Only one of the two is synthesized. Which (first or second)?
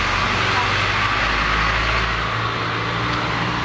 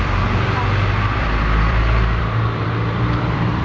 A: second